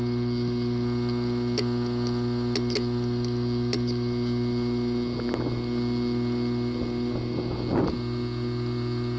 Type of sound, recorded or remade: recorded